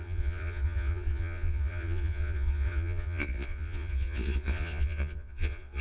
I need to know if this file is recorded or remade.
remade